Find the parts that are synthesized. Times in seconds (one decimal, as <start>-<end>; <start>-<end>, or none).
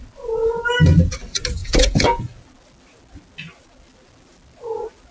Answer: 1.6-2.2